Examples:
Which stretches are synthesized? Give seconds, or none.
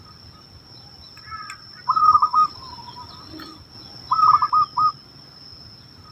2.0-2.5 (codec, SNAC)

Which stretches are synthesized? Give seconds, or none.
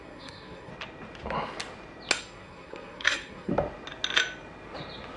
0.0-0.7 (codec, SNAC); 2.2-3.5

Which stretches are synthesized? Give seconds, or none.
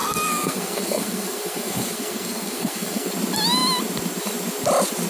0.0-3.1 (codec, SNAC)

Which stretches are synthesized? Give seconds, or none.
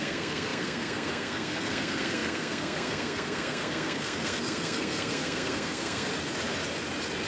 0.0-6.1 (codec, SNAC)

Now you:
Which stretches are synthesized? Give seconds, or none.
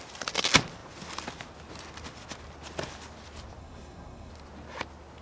3.6-4.3 (codec, SNAC)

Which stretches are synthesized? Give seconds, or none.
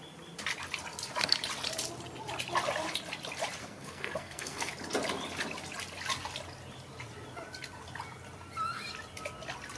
3.6-4.7 (codec, SNAC)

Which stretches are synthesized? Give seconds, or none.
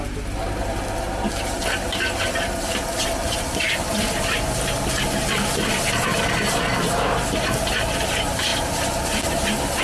none